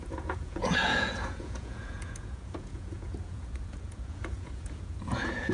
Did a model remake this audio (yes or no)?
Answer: yes